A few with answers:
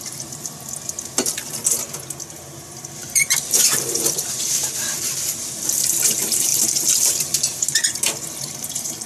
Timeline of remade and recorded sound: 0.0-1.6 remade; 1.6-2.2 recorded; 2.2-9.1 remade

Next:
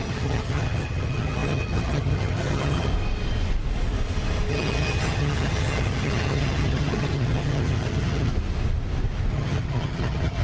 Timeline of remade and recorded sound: 0.0-2.9 remade; 2.9-4.5 recorded; 4.5-8.3 remade; 8.3-9.3 recorded; 9.3-10.4 remade

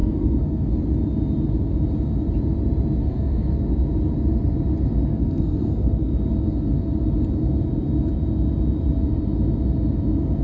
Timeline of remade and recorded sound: 0.0-0.7 remade; 0.7-3.0 recorded; 3.0-3.6 remade; 3.6-5.1 recorded; 5.1-6.1 remade; 6.1-10.4 recorded

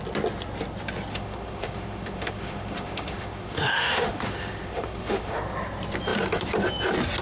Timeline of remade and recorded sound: 0.0-1.1 recorded; 1.1-5.4 remade; 5.4-7.2 recorded